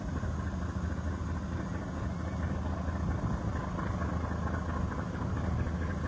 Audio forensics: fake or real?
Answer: real